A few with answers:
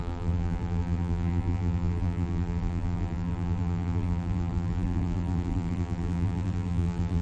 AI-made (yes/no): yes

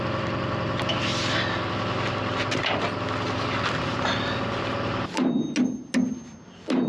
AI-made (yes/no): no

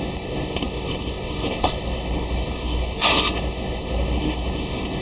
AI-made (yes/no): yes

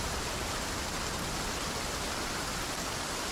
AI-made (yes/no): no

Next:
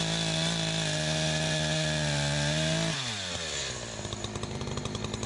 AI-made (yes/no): no